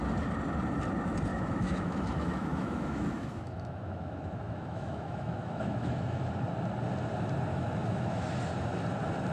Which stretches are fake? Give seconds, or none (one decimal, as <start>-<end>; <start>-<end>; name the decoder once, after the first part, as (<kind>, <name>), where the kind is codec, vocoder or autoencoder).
1.3-6.3 (autoencoder, DAC-VAE); 7.5-8.3